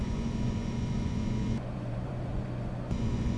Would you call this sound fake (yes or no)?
yes